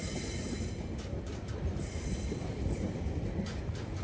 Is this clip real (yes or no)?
yes